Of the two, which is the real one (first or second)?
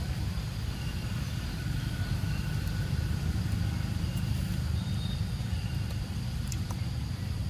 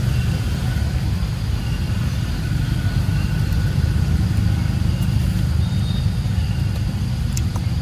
second